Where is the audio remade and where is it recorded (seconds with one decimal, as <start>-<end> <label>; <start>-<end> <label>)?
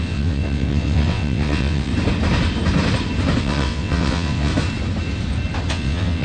0.0-1.9 remade; 1.9-3.4 recorded; 3.4-4.5 remade; 4.5-5.7 recorded; 5.7-6.2 remade